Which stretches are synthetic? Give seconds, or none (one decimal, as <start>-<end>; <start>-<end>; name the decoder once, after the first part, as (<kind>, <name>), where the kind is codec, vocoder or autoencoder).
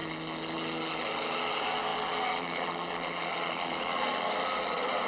none